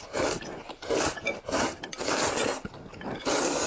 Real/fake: real